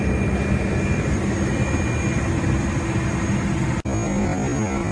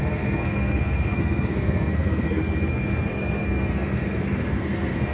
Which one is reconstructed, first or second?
second